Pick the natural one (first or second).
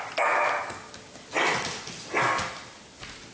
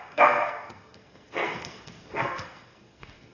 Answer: first